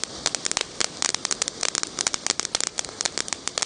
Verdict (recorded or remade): recorded